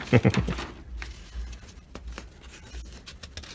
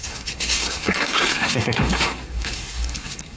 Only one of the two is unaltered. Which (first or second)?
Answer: first